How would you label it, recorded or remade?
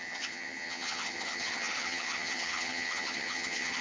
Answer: remade